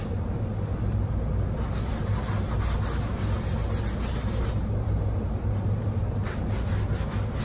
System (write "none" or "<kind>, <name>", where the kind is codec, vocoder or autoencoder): none